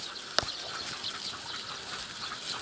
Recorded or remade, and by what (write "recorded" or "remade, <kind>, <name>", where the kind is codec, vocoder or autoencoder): recorded